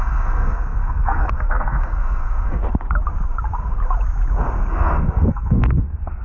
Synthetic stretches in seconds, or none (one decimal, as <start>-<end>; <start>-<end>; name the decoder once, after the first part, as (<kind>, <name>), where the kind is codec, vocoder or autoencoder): 0.0-2.6 (codec, SNAC); 4.7-6.2

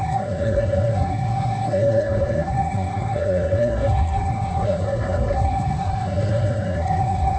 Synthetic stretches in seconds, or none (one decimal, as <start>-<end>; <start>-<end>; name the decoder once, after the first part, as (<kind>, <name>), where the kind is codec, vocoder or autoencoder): 0.0-7.4 (codec, SNAC)